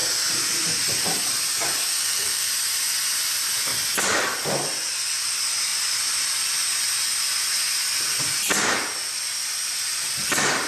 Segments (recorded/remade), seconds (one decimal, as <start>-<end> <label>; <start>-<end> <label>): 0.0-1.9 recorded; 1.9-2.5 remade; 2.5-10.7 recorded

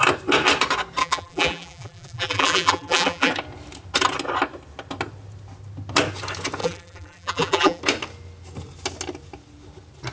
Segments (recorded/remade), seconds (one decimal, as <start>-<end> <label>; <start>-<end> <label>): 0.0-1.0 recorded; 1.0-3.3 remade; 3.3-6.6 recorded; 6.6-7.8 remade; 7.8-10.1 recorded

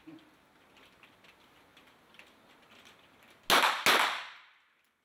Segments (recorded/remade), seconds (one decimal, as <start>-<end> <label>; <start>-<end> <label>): 0.0-5.0 recorded

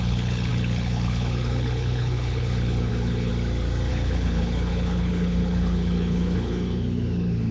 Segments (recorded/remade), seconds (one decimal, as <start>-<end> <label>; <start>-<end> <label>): 0.0-3.3 remade; 3.3-3.9 recorded; 3.9-7.5 remade

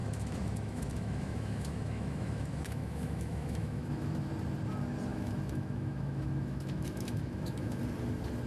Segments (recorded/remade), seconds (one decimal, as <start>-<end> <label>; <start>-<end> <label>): 0.0-4.3 remade; 4.3-5.1 recorded; 5.1-7.8 remade; 7.8-8.5 recorded